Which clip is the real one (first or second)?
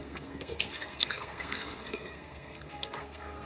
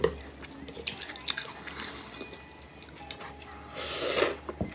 second